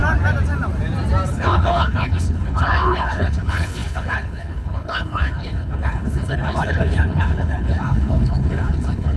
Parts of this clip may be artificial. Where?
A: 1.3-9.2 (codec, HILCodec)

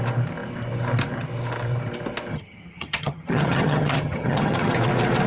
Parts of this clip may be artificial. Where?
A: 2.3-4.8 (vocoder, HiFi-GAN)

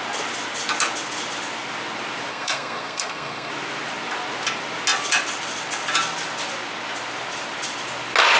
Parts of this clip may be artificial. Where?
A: 2.3-3.5 (codec, SNAC)

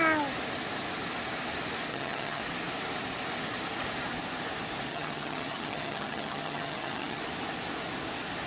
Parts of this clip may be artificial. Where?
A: 1.9-2.4 (vocoder, HiFi-GAN); 4.9-7.2

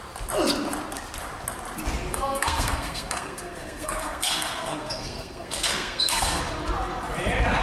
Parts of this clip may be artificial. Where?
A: 2.1-6.4 (codec, SNAC)

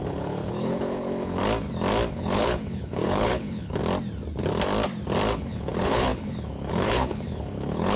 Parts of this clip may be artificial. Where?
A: 0.0-1.4 (codec, HILCodec); 2.1-3.8; 5.3-8.0